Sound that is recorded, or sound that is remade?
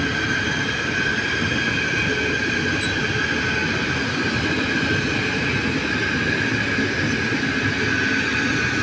recorded